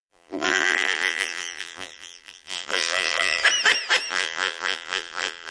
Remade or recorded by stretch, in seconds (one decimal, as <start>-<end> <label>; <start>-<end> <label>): 0.0-3.4 remade; 3.4-4.1 recorded; 4.1-5.5 remade